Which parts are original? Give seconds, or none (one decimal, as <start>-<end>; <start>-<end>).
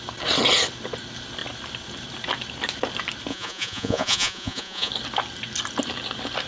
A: 0.0-3.3; 4.9-6.5